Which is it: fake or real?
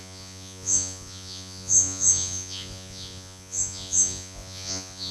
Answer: fake